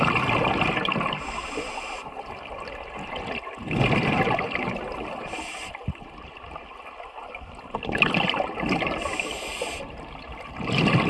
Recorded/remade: recorded